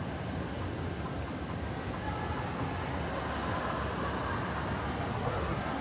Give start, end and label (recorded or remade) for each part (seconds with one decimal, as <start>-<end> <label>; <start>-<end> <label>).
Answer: 0.0-5.1 recorded; 5.1-5.8 remade